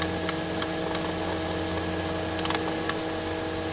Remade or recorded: recorded